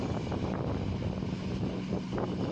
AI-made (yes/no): no